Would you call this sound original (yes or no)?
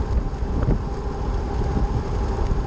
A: yes